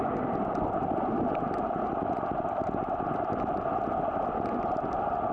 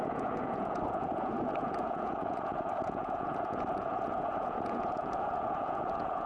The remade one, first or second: second